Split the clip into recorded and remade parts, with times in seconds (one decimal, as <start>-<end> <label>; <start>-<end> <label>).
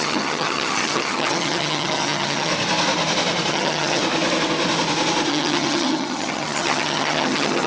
0.0-2.5 remade; 2.5-3.5 recorded; 3.5-4.0 remade; 4.0-5.3 recorded; 5.3-7.7 remade